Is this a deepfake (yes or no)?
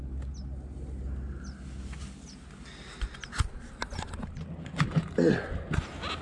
no